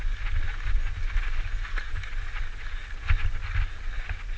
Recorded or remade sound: recorded